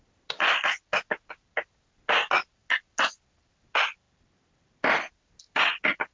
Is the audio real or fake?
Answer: real